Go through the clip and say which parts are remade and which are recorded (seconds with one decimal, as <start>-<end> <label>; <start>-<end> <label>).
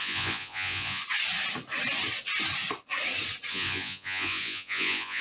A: 0.0-1.0 remade; 1.0-3.5 recorded; 3.5-5.2 remade